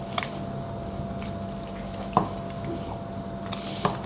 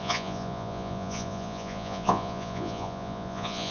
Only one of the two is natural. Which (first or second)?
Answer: first